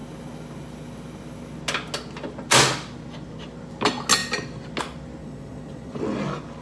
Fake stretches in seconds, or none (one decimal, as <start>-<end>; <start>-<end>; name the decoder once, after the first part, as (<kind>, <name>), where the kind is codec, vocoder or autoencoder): 5.2-6.0 (vocoder, Vocos)